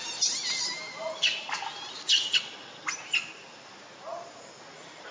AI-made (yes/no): no